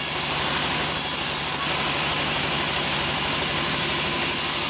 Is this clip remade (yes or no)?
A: no